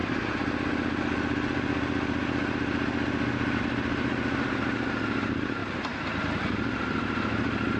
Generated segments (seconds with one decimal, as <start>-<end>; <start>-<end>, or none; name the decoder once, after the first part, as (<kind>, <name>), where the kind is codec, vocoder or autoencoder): none